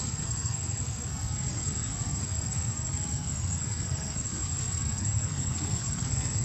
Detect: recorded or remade remade